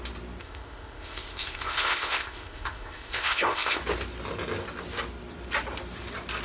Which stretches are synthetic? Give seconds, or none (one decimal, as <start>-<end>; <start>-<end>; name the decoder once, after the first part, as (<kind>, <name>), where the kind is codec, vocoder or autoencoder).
0.4-3.8 (codec, ZipCodec)